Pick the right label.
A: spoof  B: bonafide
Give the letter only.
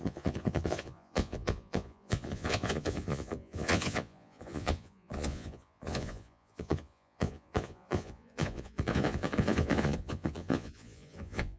A